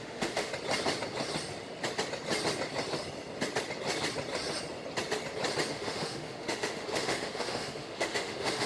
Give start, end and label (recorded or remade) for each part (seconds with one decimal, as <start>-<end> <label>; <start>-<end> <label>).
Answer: 0.0-0.5 remade; 0.5-5.7 recorded; 5.7-8.7 remade